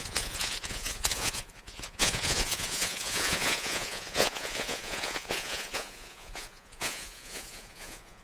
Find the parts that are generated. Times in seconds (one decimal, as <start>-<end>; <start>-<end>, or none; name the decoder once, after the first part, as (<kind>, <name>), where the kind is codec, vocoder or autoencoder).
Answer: 0.0-8.2 (vocoder, Vocos)